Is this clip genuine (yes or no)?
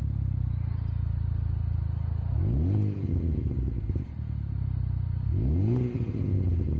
yes